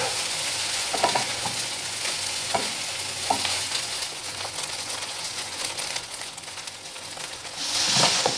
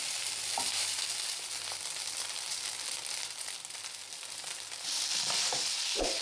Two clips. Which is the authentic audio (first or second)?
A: second